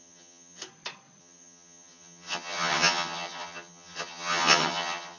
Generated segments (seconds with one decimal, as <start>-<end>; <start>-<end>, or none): 0.0-0.6; 1.2-5.2